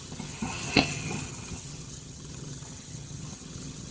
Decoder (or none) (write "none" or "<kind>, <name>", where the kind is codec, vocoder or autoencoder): vocoder, HiFi-GAN